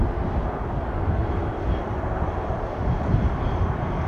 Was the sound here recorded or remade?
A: recorded